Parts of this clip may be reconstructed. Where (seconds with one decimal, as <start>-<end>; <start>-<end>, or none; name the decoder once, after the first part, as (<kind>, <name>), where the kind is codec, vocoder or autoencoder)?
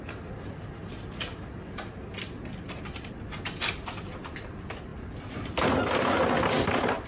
none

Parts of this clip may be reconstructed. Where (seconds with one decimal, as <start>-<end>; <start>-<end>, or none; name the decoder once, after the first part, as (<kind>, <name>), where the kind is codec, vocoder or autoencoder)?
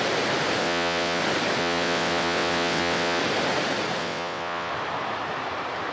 0.6-1.2 (vocoder, WaveNeXt); 1.6-3.2; 4.0-4.7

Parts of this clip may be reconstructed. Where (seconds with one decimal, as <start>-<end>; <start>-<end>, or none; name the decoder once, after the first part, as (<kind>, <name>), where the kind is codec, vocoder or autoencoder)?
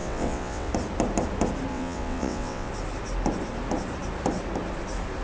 0.0-0.7 (vocoder, WaveNeXt); 1.7-2.7